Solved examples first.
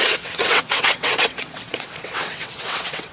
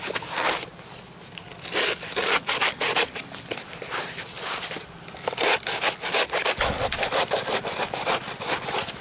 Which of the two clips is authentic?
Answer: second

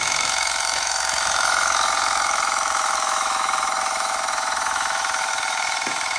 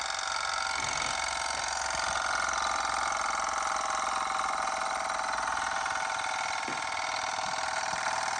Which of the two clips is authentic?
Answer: second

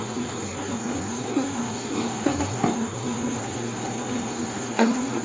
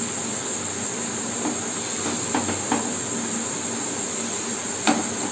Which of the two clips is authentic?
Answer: second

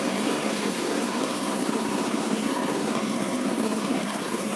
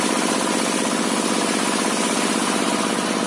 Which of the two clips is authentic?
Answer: second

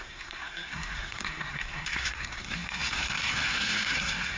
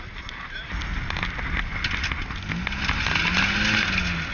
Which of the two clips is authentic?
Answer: second